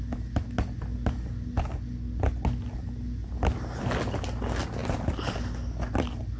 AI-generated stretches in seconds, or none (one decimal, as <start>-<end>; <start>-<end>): none